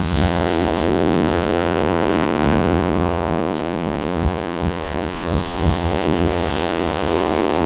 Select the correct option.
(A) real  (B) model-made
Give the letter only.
B